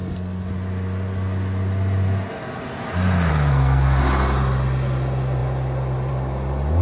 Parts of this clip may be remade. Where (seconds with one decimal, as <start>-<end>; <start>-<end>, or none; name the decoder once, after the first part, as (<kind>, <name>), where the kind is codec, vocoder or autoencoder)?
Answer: 0.0-0.5 (codec, SNAC); 3.3-4.0